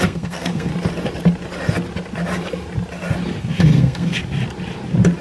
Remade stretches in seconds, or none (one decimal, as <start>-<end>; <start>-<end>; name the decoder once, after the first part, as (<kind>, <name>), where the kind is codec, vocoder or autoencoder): 0.0-0.7 (codec, SNAC); 3.4-4.2